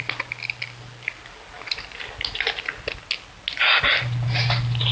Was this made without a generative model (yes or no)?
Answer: yes